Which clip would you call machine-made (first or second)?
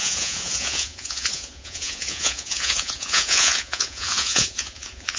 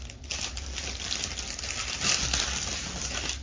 first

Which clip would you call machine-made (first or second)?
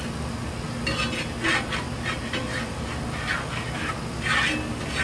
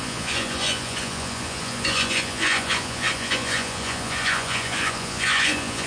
second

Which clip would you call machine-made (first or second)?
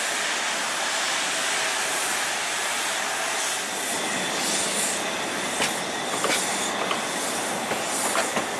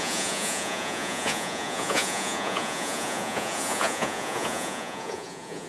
second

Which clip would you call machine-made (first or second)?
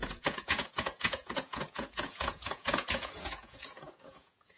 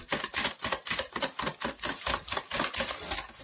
first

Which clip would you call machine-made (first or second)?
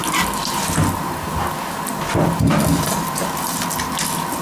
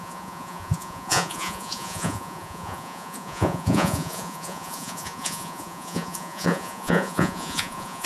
second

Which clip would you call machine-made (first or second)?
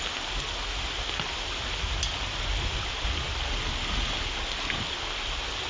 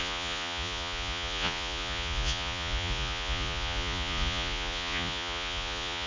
second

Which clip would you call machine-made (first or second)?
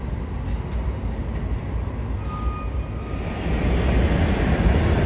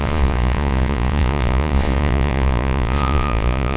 second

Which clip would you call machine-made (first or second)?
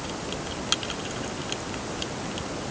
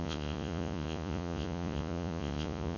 second